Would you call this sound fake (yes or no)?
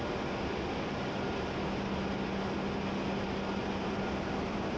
no